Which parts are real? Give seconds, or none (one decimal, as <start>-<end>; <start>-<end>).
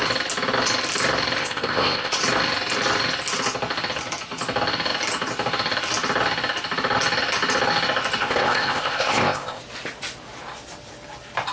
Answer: 0.0-1.4; 2.2-8.2; 9.6-11.5